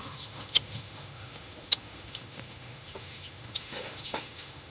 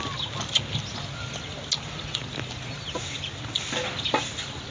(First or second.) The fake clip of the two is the first